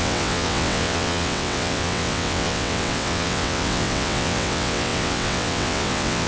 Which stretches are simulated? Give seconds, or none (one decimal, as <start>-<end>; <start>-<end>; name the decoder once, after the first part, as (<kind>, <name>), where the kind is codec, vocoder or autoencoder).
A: 0.0-6.3 (vocoder, WaveNeXt)

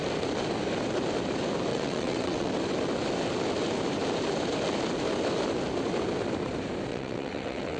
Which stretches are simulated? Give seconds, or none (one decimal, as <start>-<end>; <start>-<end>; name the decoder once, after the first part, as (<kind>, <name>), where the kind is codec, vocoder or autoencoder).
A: 1.7-2.5 (vocoder, WaveNeXt); 6.9-7.8

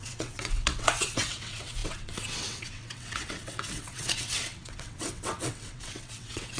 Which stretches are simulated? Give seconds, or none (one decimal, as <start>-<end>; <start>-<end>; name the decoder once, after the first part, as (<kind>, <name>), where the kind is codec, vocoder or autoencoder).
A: 0.0-6.6 (vocoder, WaveNeXt)

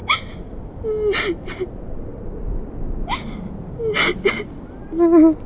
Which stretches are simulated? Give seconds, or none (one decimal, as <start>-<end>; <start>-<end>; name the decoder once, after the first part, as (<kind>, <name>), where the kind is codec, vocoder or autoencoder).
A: none

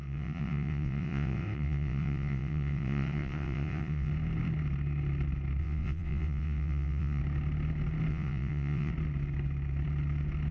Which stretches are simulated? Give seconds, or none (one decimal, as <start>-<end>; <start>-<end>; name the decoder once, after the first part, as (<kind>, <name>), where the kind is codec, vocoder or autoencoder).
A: 0.0-4.1 (vocoder, WaveNeXt); 5.6-7.2; 8.1-8.9

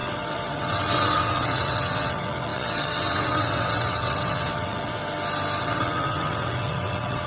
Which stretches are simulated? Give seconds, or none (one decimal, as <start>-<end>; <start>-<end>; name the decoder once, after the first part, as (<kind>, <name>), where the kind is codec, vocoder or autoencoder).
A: 0.0-5.0 (vocoder, WaveNeXt); 5.6-7.3